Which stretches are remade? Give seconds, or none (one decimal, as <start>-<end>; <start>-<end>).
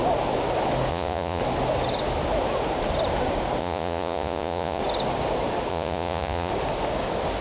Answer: 0.9-1.4; 3.6-4.8; 5.7-6.5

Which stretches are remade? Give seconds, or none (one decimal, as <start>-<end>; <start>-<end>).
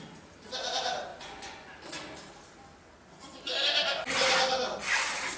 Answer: 1.1-1.7